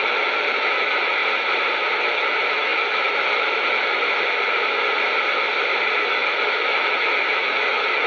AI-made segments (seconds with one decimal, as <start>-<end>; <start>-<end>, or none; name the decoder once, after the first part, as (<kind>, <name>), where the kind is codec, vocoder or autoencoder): 0.0-1.2 (autoencoder, DAC-VAE); 2.1-4.6; 6.1-8.1